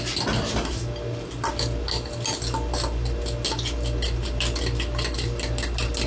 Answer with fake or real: real